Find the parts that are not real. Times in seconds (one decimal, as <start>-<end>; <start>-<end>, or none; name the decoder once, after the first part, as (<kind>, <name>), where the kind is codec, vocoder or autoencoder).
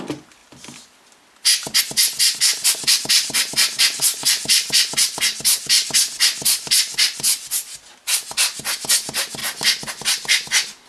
2.5-5.2 (vocoder, BigVGAN v2)